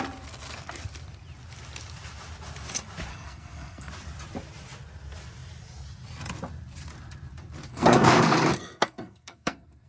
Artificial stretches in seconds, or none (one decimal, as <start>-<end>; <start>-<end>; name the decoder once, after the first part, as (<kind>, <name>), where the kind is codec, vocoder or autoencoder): 3.1-3.9 (codec, SNAC); 7.7-9.9